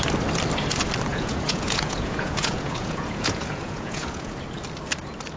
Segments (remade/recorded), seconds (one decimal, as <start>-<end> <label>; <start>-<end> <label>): 0.0-1.1 recorded; 1.1-4.3 remade; 4.3-5.4 recorded